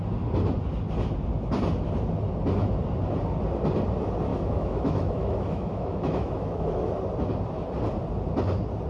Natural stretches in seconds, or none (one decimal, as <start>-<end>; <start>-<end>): 0.0-4.3; 6.9-8.9